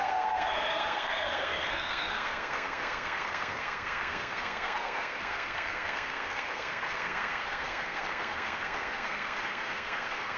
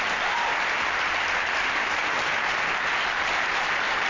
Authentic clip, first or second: second